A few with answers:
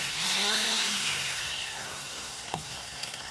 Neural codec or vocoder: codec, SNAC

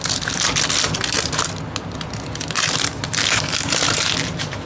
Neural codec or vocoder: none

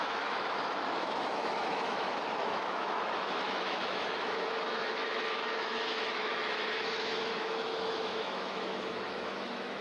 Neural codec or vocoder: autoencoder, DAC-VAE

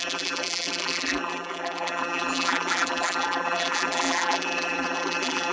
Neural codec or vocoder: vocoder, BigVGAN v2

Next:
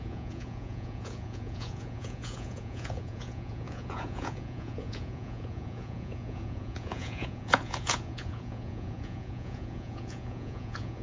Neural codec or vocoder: vocoder, Vocos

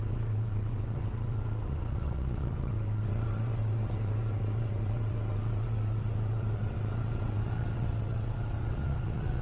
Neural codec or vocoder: vocoder, WaveNeXt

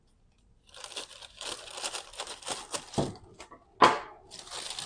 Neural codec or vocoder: none